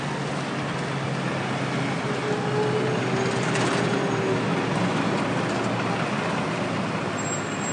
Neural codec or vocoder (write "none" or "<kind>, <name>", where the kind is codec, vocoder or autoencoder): none